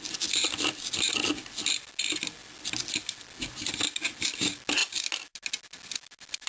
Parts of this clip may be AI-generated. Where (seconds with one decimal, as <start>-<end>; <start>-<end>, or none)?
none